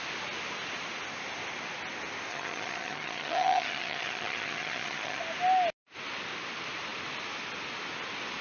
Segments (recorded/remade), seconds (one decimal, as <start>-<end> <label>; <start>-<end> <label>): 0.0-2.3 recorded; 2.3-5.2 remade; 5.2-8.4 recorded